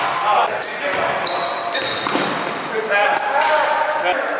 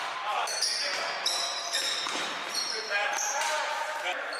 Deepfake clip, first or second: second